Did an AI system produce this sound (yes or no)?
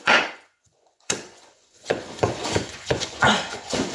yes